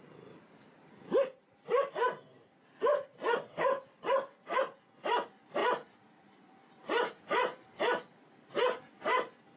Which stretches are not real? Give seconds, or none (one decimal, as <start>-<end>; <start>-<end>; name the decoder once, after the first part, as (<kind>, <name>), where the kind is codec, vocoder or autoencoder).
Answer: 3.1-4.6 (vocoder, WaveNeXt)